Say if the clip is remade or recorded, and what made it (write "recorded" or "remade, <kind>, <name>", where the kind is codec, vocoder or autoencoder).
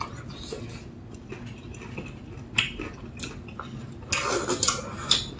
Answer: recorded